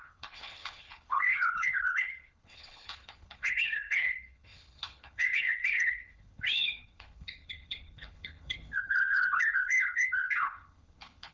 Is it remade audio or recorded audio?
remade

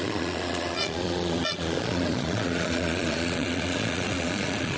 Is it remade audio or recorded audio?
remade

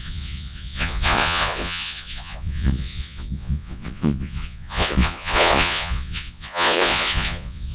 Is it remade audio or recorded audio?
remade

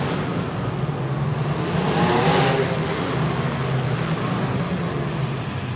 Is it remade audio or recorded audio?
recorded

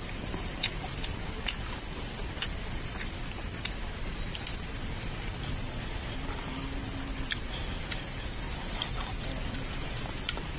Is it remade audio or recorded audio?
recorded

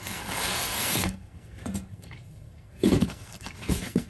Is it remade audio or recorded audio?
remade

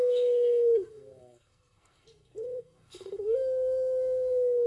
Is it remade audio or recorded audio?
remade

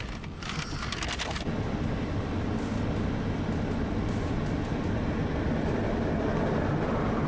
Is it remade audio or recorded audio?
recorded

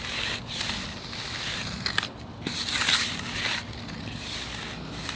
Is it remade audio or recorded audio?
recorded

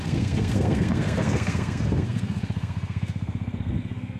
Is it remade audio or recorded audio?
remade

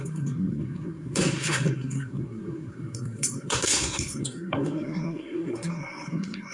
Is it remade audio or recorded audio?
remade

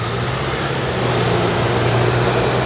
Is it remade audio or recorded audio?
recorded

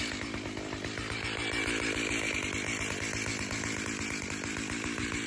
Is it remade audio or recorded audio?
recorded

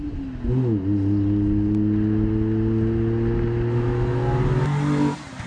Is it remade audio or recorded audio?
recorded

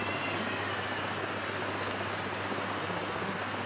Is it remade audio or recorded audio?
recorded